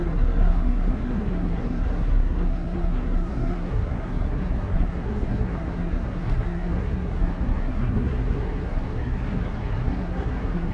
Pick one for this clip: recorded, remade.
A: remade